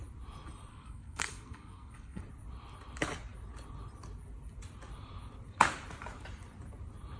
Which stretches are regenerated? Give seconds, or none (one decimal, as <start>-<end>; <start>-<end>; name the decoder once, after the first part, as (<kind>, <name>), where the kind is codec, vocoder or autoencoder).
0.7-2.2 (codec, SNAC)